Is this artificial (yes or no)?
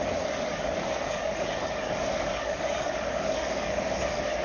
yes